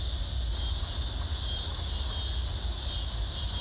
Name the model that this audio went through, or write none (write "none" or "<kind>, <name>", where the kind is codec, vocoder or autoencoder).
none